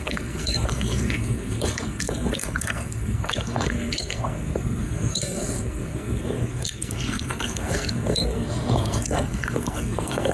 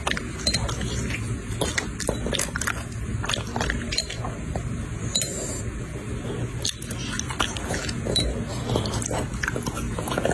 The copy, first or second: first